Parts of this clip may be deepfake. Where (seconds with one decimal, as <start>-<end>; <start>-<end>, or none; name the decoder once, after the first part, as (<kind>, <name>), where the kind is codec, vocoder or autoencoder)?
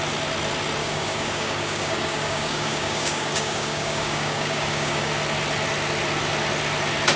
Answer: 0.8-5.1 (codec, DAC)